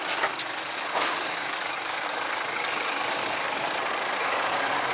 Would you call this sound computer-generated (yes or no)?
yes